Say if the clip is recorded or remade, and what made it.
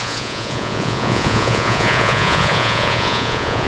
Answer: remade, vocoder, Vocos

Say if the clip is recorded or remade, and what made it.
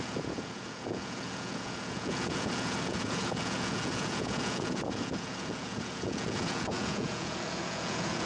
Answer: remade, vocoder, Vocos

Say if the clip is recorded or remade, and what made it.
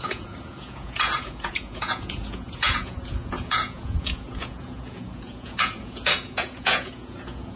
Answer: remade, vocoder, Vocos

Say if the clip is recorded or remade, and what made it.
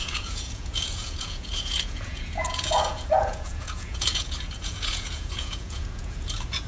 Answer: remade, vocoder, Vocos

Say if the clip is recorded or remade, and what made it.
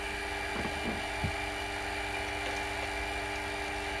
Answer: recorded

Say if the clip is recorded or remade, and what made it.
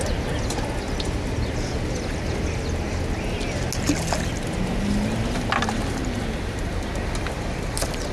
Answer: recorded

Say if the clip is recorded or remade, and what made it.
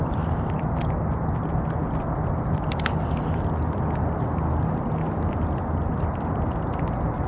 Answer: recorded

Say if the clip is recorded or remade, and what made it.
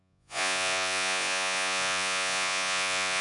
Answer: remade, vocoder, Vocos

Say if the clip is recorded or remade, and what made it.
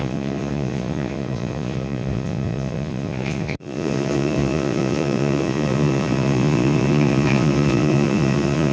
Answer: remade, vocoder, Vocos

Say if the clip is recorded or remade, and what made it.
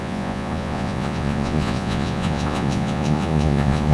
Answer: remade, vocoder, Vocos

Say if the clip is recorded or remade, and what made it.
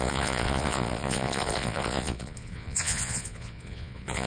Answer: remade, vocoder, Vocos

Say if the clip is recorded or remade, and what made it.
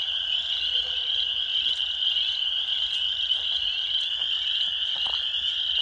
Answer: recorded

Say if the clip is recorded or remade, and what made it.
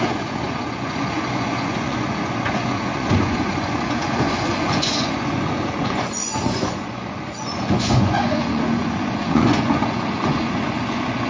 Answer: remade, vocoder, Vocos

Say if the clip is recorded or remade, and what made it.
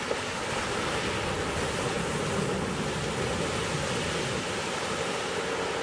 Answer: recorded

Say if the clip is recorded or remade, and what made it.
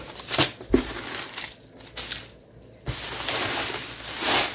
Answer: recorded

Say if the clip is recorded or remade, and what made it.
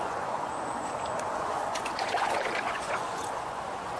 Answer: remade, vocoder, Vocos